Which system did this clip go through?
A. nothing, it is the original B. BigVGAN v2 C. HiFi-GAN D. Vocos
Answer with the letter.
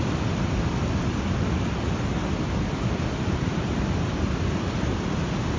B